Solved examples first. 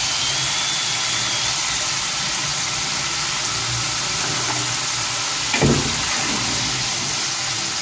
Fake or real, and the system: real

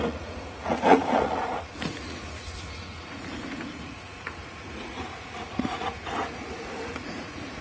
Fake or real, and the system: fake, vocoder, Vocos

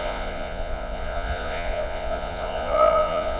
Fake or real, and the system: fake, vocoder, Vocos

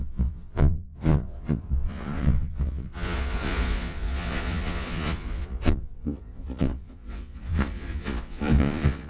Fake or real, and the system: fake, vocoder, Vocos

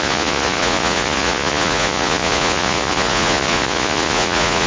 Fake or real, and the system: fake, vocoder, Vocos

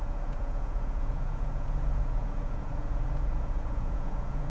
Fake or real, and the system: fake, vocoder, Vocos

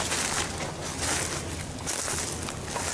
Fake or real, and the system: real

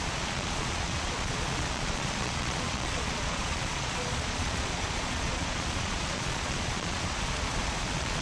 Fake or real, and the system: fake, vocoder, Vocos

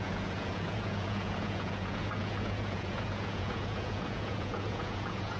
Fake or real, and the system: fake, vocoder, Vocos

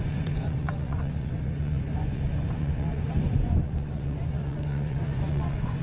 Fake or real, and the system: fake, vocoder, Vocos